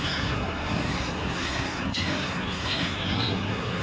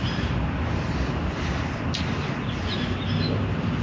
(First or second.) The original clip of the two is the second